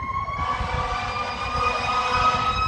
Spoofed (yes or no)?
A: no